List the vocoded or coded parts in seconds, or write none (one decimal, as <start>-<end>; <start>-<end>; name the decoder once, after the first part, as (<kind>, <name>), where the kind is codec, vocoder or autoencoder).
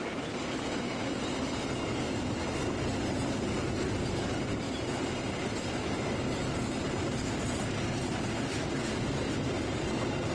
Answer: 4.4-5.4 (vocoder, BigVGAN v2)